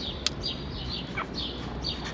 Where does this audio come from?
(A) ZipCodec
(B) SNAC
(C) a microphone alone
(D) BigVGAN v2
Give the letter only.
C